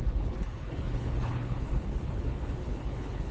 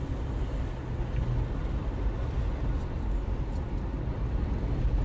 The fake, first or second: first